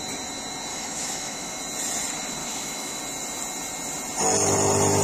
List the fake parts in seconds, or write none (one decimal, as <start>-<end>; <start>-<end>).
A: 0.7-1.6; 2.4-3.0